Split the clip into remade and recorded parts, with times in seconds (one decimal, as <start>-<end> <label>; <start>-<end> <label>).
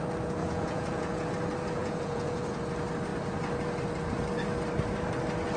0.0-0.4 recorded; 0.4-1.3 remade; 1.3-1.8 recorded; 1.8-2.6 remade; 2.6-5.6 recorded